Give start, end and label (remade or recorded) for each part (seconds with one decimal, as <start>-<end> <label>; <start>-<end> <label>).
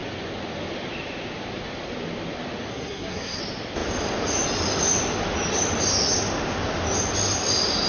0.0-2.7 recorded; 2.7-3.4 remade; 3.4-7.9 recorded